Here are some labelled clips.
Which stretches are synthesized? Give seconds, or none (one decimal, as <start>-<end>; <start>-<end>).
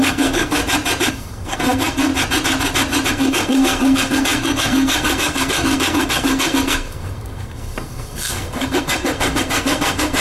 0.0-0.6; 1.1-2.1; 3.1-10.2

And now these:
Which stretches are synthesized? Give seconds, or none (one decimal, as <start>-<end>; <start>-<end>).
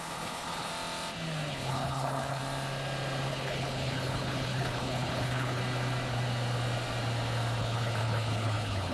0.0-0.7; 1.5-2.4; 3.3-5.6; 7.6-8.9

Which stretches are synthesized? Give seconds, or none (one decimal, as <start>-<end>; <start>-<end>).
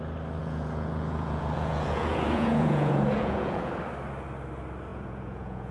0.4-3.7; 4.9-5.7